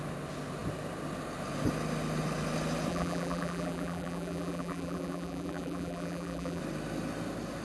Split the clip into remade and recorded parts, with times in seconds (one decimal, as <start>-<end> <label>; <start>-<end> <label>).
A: 0.0-2.9 recorded; 2.9-6.6 remade; 6.6-7.6 recorded